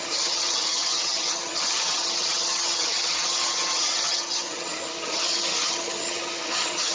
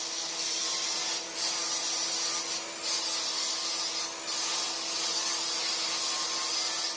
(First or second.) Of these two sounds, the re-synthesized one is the first